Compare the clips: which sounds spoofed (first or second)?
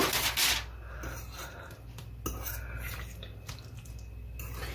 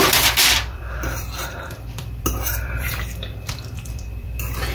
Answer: second